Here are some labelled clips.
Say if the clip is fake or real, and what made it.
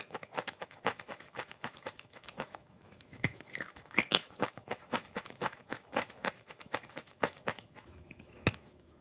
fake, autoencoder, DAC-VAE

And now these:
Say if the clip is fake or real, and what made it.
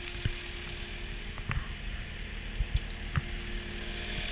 real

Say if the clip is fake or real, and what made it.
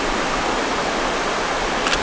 real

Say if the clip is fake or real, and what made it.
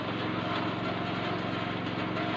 real